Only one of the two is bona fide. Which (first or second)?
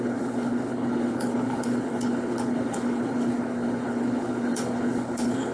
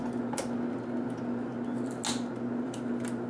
second